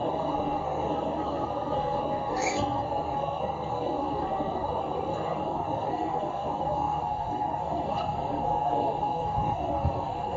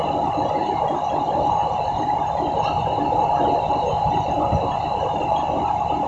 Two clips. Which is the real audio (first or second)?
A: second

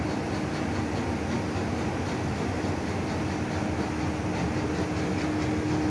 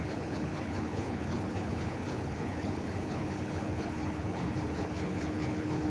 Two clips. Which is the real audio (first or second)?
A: first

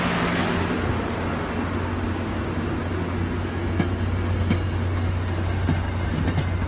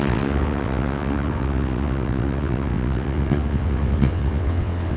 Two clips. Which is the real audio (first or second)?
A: first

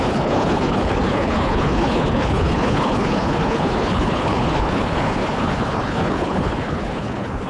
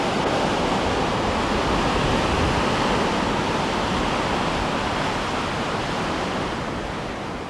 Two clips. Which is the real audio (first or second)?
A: second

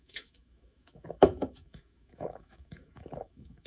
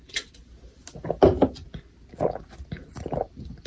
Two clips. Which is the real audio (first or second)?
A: second